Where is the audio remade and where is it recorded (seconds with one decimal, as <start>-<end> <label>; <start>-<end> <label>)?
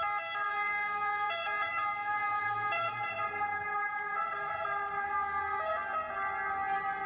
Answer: 0.0-0.4 recorded; 0.4-3.1 remade; 3.1-7.1 recorded